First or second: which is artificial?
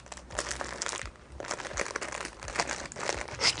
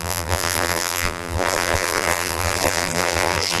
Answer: second